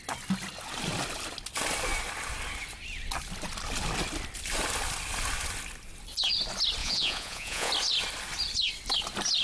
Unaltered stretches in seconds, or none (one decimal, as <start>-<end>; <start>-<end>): 0.0-6.8; 7.7-9.4